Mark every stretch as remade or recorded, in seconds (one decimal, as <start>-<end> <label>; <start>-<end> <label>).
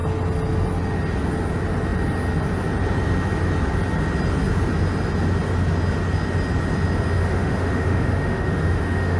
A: 0.0-7.2 recorded; 7.2-9.2 remade